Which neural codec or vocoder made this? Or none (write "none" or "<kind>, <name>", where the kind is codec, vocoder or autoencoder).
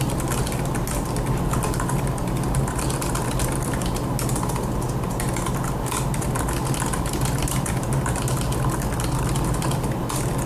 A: none